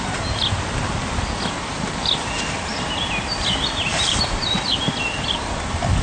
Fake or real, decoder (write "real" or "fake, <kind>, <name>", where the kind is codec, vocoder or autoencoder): real